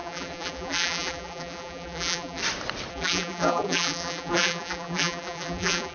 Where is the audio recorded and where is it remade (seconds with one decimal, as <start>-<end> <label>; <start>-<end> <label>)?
0.0-2.4 remade; 2.4-2.9 recorded; 2.9-5.9 remade